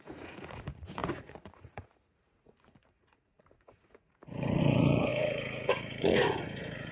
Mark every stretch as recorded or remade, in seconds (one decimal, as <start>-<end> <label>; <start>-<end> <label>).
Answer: 0.0-6.9 remade